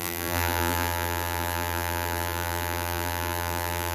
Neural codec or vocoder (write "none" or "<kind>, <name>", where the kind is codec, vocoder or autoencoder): vocoder, BigVGAN v2